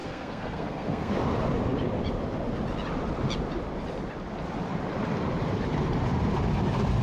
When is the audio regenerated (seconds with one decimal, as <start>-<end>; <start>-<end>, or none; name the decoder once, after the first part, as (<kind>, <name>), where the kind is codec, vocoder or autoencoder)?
0.0-1.1 (codec, SNAC)